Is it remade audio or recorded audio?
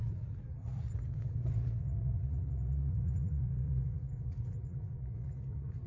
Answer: remade